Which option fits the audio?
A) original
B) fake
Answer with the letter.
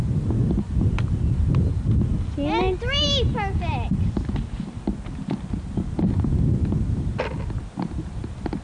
A